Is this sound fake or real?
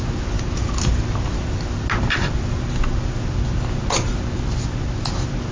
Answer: real